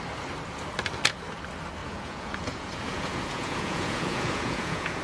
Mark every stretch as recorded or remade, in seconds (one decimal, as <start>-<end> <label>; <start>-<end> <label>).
0.0-1.8 recorded; 1.8-5.0 remade